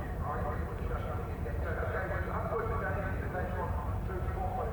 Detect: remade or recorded remade